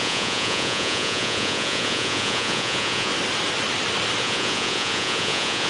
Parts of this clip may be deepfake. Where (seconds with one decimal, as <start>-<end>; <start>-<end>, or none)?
0.0-3.1; 4.2-5.7

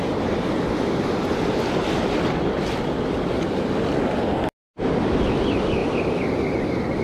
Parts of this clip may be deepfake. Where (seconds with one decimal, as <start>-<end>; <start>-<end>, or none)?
none

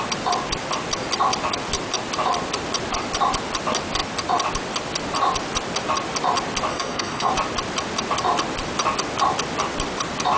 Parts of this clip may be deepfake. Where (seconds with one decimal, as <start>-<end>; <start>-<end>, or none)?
6.7-7.3

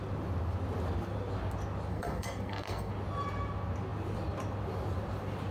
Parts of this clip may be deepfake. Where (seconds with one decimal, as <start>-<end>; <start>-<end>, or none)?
1.9-2.9

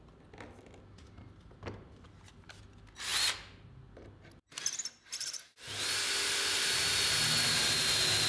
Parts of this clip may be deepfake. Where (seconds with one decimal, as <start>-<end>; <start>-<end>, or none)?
none

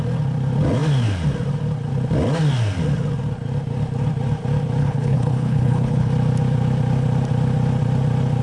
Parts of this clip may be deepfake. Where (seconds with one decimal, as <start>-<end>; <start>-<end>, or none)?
4.8-6.1

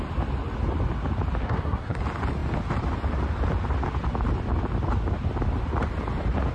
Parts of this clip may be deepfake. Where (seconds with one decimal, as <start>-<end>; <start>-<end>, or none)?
1.4-2.0

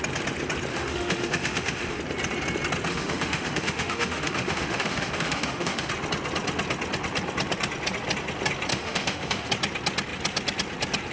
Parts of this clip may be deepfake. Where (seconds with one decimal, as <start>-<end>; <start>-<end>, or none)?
0.7-2.0; 2.9-5.9; 8.7-9.5